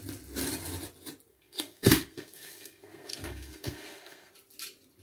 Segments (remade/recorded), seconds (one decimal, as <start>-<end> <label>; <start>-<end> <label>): 0.0-1.3 recorded; 1.3-4.3 remade; 4.3-5.0 recorded